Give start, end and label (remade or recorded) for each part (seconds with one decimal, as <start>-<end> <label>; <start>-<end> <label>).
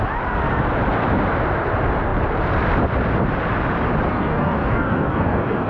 0.0-4.1 recorded; 4.1-5.7 remade